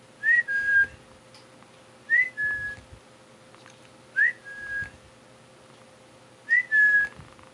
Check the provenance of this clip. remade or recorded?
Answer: recorded